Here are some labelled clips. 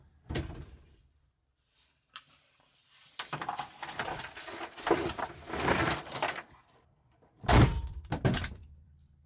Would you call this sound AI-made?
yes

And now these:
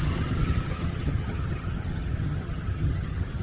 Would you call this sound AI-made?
yes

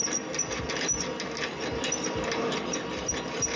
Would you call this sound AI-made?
no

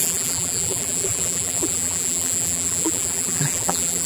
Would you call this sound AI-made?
yes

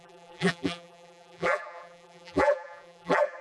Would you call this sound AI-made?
yes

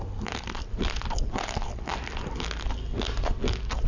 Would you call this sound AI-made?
no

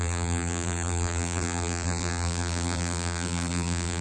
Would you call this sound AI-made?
yes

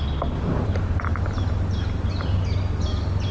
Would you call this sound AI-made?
no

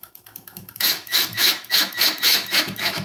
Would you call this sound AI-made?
yes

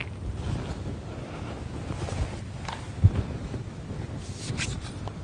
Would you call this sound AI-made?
no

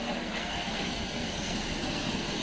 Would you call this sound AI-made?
yes